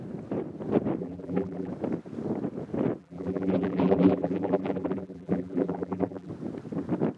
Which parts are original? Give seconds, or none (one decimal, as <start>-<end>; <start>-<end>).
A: 0.0-1.0; 1.7-3.0; 6.3-7.2